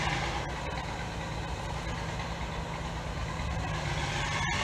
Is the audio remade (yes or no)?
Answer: no